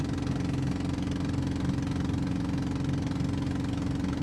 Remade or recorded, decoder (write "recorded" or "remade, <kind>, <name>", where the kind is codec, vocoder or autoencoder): recorded